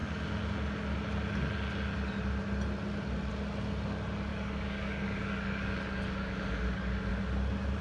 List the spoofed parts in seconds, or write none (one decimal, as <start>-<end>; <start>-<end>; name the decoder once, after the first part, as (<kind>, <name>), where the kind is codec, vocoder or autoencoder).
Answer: 4.3-7.1 (codec, DAC)